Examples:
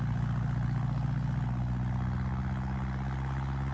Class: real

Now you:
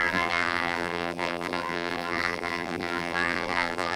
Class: fake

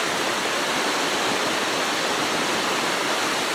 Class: real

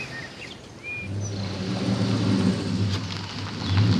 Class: real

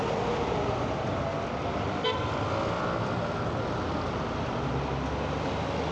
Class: fake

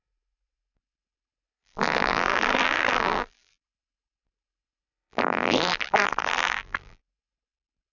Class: fake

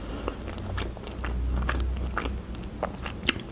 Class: real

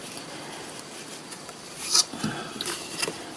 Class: real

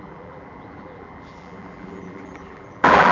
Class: fake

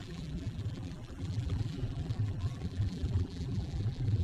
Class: fake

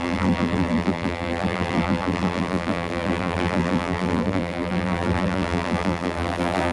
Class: fake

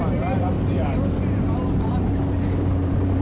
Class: fake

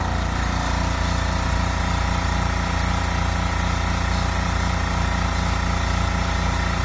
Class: real